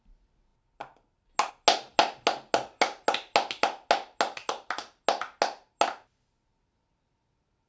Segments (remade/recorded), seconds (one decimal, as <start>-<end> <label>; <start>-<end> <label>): 0.0-7.7 recorded